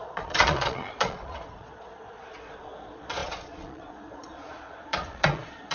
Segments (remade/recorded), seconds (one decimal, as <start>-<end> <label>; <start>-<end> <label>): 0.0-5.7 remade

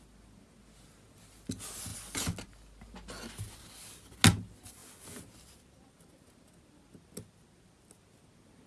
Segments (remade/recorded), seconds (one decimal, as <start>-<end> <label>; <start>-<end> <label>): 0.0-8.7 recorded

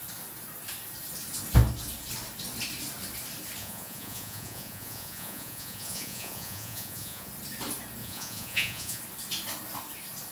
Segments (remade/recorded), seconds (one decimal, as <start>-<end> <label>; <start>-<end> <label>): 0.0-3.6 recorded; 3.6-7.3 remade; 7.3-8.0 recorded; 8.0-9.0 remade; 9.0-10.3 recorded

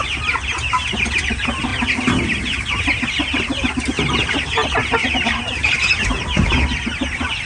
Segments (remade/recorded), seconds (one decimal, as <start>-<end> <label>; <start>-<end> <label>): 0.0-7.5 recorded

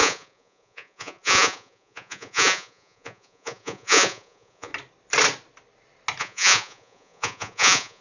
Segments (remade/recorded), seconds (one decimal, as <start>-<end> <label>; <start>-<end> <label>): 0.0-4.7 remade; 4.7-6.2 recorded; 6.2-8.0 remade

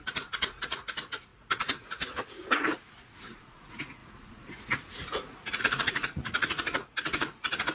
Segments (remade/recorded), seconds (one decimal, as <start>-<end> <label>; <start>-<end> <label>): 0.0-7.7 remade

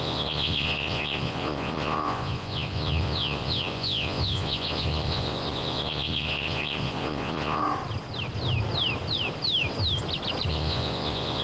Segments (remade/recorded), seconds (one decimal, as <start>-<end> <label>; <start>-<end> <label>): 0.0-7.6 remade; 7.6-10.5 recorded; 10.5-11.4 remade